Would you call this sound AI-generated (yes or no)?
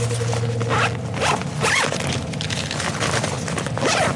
no